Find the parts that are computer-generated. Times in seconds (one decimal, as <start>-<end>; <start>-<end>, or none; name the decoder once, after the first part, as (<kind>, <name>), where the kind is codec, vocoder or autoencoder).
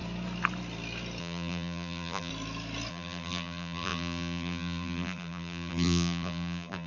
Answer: 1.2-2.3 (vocoder, BigVGAN v2); 2.9-6.9